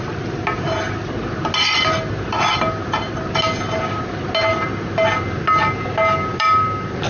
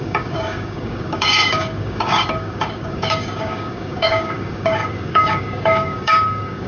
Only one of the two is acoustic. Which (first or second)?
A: first